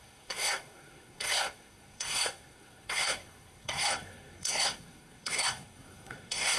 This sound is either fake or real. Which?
fake